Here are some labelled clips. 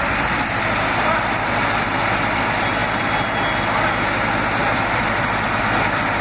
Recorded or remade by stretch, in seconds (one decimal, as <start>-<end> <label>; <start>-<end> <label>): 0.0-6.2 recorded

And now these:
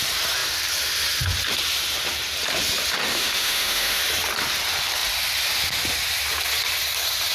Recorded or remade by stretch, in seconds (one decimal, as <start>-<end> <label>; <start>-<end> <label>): 0.0-3.1 recorded; 3.1-4.0 remade; 4.0-7.3 recorded

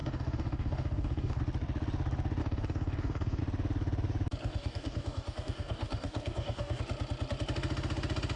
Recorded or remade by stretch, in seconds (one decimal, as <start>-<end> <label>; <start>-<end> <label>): 0.0-1.4 remade; 1.4-2.4 recorded; 2.4-3.4 remade; 3.4-4.4 recorded; 4.4-6.8 remade; 6.8-8.4 recorded